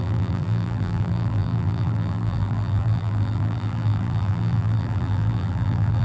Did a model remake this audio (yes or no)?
yes